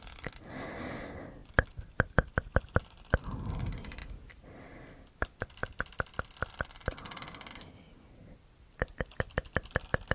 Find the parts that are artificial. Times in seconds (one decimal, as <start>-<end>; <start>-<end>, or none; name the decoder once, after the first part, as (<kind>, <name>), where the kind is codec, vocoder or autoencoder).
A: none